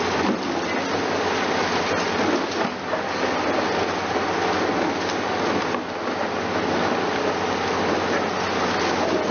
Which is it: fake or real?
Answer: real